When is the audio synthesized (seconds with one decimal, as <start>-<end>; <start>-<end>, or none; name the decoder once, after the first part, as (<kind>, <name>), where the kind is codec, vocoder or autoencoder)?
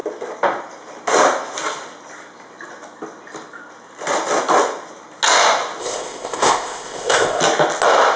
5.8-7.4 (codec, ZipCodec)